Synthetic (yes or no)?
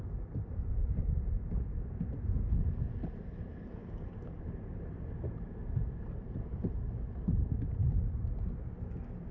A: no